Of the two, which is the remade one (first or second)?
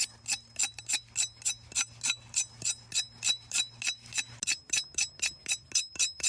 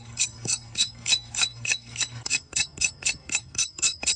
second